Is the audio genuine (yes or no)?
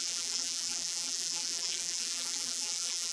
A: no